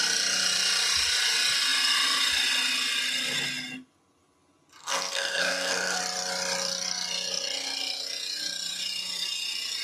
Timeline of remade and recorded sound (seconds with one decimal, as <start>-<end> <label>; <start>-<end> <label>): 0.0-4.8 recorded; 4.8-6.0 remade; 6.0-9.8 recorded